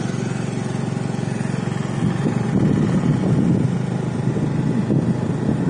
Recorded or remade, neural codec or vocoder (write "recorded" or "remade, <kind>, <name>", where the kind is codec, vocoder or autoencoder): recorded